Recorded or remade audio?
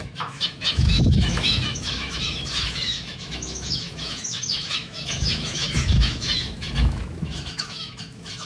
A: remade